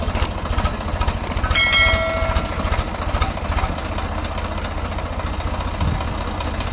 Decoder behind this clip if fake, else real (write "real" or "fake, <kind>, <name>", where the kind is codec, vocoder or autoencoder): real